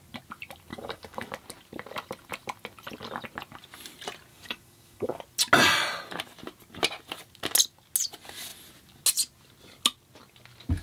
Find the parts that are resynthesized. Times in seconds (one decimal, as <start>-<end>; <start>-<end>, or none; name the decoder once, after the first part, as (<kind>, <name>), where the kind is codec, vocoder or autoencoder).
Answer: 0.7-1.3 (codec, DAC); 4.3-5.2